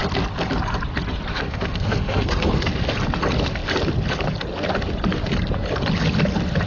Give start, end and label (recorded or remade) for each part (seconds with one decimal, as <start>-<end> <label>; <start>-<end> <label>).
0.0-1.3 recorded; 1.3-2.7 remade; 2.7-6.7 recorded